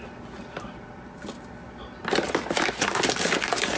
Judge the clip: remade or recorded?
recorded